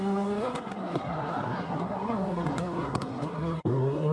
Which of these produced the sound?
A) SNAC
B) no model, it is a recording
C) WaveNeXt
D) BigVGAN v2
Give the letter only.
A